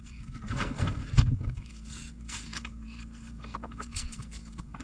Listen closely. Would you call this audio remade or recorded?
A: remade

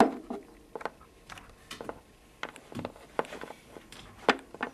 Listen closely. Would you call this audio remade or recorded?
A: recorded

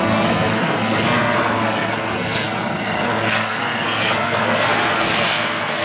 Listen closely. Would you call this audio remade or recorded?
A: remade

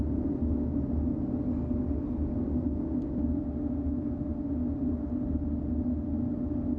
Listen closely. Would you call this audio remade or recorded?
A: recorded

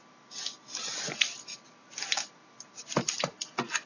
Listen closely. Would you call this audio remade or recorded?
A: recorded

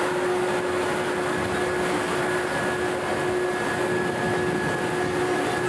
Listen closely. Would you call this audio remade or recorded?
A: recorded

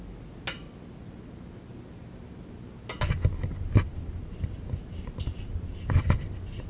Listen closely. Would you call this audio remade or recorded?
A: recorded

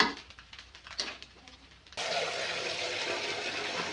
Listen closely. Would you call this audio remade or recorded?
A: recorded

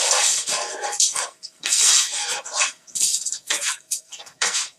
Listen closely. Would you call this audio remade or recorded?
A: remade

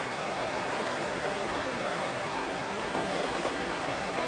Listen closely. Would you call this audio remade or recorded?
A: remade